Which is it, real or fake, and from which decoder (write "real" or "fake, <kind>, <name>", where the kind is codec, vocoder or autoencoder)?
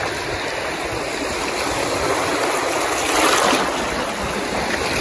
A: real